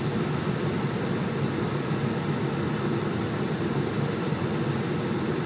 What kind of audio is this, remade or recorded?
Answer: recorded